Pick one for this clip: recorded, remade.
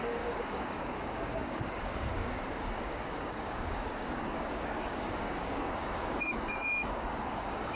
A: remade